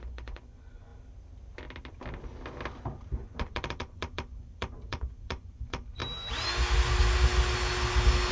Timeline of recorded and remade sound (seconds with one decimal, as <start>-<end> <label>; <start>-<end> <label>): 0.0-0.9 remade; 0.9-3.4 recorded; 3.4-6.0 remade; 6.0-8.3 recorded